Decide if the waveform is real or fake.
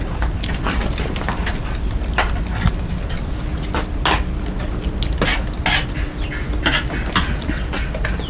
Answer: real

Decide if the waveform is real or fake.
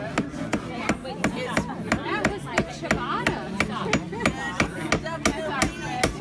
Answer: real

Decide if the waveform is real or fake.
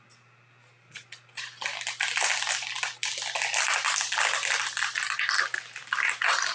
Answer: real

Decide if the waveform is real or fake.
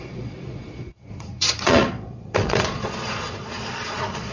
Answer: fake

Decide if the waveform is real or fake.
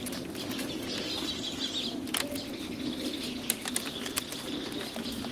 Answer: real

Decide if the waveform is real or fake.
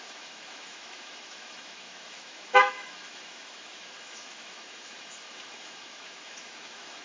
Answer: fake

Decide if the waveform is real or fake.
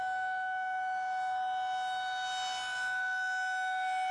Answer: real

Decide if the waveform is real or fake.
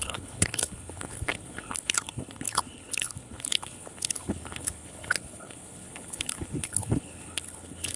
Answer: fake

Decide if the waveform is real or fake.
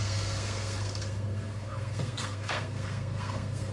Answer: fake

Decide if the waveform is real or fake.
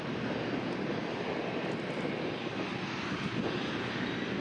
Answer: real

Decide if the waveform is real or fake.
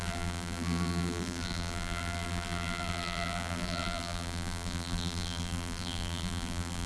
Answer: fake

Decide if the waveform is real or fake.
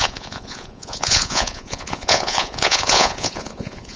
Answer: fake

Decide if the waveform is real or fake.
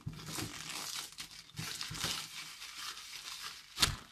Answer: real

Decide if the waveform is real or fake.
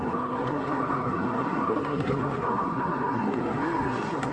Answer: fake